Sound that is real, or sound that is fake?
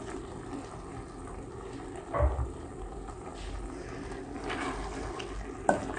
real